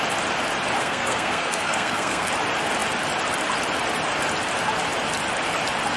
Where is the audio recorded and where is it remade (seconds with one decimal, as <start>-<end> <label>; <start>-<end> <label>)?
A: 0.0-0.8 recorded; 0.8-2.3 remade; 2.3-6.0 recorded